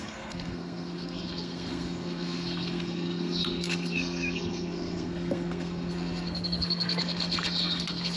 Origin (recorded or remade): remade